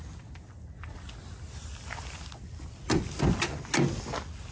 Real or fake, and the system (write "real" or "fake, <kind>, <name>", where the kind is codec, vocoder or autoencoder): real